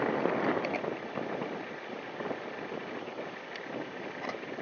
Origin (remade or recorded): recorded